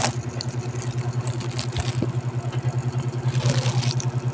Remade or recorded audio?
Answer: recorded